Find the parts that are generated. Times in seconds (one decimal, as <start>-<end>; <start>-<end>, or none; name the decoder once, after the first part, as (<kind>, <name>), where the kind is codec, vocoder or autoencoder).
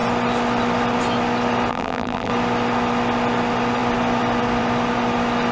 1.7-2.3 (vocoder, BigVGAN v2)